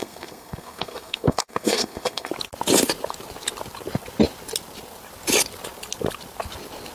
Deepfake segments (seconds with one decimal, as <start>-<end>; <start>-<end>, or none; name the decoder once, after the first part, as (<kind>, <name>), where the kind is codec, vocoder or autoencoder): 0.0-2.3 (codec, SNAC)